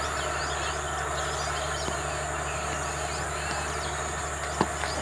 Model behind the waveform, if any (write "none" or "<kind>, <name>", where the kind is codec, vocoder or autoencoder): none